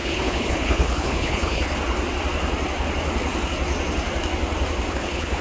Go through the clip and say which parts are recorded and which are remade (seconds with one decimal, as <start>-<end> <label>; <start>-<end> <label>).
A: 0.0-1.7 remade; 1.7-4.9 recorded; 4.9-5.4 remade